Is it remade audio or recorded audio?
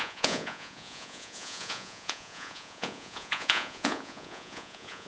remade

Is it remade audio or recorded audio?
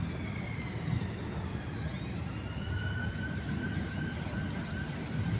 recorded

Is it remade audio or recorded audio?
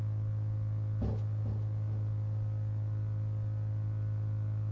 recorded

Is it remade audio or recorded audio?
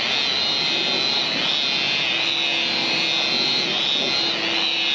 recorded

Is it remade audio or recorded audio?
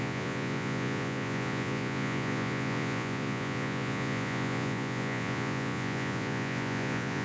remade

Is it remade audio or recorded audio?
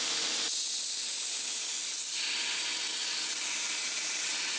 recorded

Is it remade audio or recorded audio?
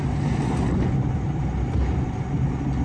recorded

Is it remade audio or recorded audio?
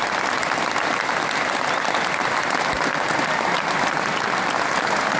recorded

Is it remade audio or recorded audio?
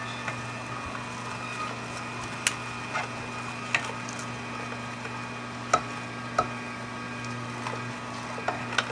recorded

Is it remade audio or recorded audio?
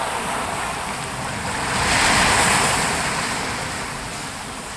recorded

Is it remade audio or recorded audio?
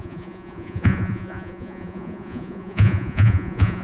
remade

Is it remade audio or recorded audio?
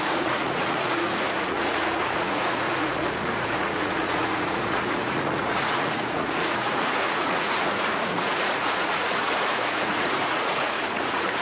remade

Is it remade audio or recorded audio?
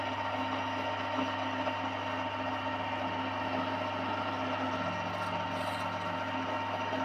recorded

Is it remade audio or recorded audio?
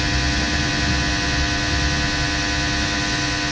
recorded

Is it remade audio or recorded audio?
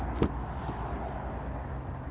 recorded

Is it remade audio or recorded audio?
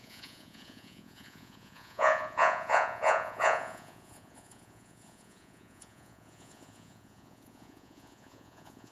remade